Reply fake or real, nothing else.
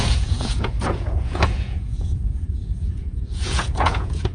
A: fake